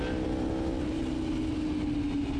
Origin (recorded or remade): recorded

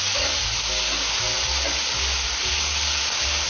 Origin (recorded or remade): recorded